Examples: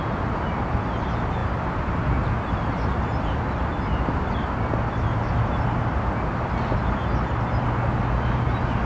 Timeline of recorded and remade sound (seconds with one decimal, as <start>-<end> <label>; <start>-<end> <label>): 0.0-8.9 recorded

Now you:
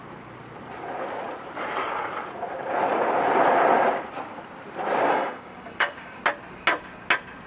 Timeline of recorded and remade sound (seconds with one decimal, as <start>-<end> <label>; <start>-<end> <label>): 0.0-5.1 recorded; 5.1-6.2 remade; 6.2-7.5 recorded

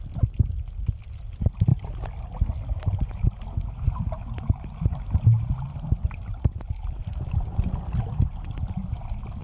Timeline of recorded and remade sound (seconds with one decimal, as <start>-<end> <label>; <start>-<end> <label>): 0.0-9.4 recorded

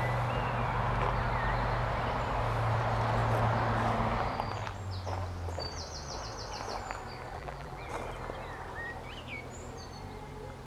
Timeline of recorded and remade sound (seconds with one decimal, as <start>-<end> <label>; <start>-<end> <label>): 0.0-7.3 recorded; 7.3-7.9 remade; 7.9-10.7 recorded